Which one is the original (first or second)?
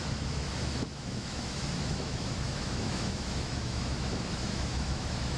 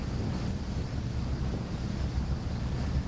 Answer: second